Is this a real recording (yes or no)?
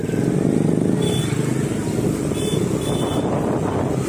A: yes